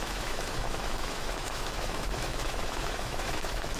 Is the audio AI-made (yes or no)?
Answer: yes